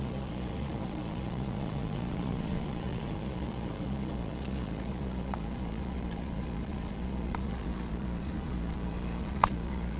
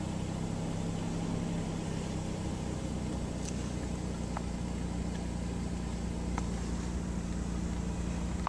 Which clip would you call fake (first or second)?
first